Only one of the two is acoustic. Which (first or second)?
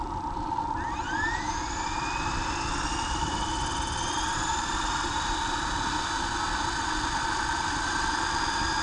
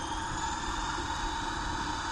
second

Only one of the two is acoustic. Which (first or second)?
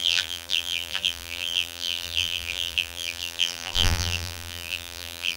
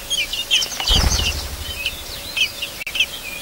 second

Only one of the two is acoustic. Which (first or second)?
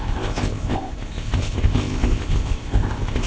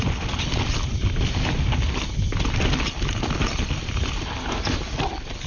second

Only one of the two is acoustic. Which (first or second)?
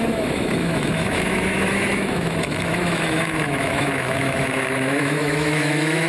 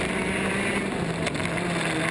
second